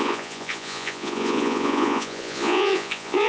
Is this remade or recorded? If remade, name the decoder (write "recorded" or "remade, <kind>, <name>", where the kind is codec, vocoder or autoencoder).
remade, vocoder, Vocos